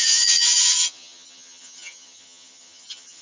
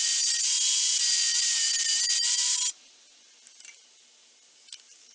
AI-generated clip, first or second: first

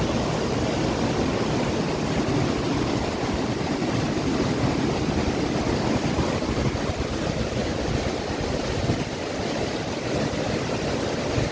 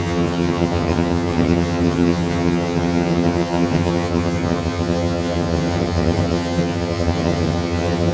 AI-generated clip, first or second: second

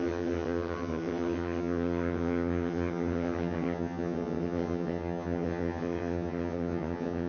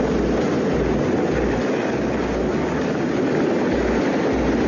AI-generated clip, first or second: first